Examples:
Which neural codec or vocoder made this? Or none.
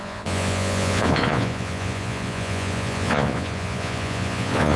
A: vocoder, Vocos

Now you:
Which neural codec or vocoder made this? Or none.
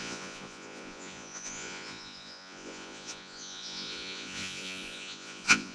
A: vocoder, Vocos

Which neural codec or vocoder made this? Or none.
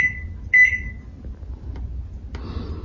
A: none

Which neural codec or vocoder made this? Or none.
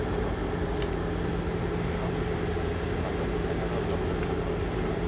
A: none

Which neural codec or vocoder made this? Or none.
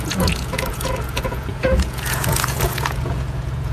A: vocoder, Vocos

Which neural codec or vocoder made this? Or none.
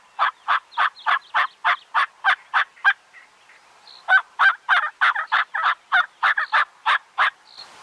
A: none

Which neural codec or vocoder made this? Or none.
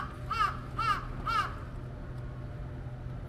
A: none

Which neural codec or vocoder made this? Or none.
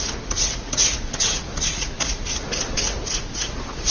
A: vocoder, Vocos